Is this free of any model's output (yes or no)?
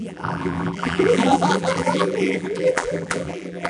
no